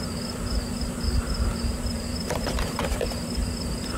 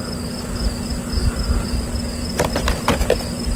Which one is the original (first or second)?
second